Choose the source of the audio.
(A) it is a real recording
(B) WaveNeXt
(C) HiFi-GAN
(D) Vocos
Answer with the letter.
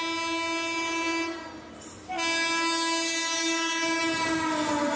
A